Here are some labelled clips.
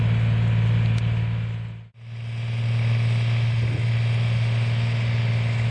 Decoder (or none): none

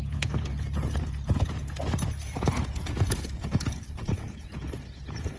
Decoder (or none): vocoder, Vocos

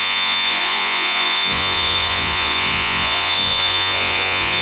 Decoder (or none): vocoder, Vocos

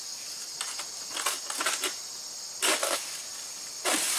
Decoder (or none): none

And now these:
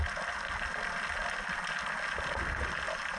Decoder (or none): none